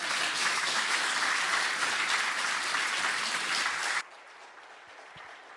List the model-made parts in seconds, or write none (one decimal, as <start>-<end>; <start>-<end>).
0.4-1.1